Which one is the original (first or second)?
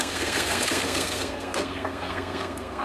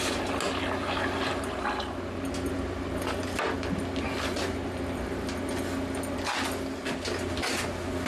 second